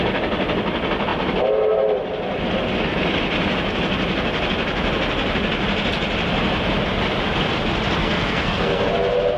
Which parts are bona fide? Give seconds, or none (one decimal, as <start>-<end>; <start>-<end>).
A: 0.0-8.0; 8.9-9.4